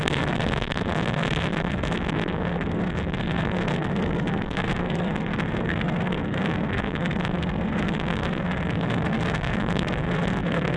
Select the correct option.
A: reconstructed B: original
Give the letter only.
A